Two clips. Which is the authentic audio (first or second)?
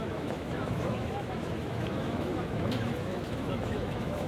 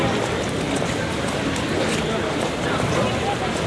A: second